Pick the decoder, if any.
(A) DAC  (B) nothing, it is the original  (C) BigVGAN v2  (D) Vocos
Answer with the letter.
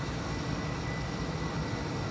B